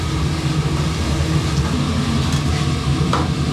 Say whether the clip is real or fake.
real